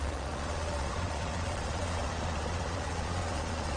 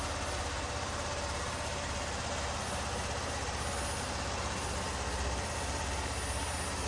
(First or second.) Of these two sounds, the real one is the second